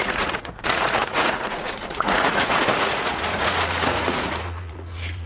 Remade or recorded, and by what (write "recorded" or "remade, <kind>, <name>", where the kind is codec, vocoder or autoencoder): remade, vocoder, Vocos